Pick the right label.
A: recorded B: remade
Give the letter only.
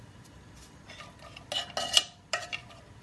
A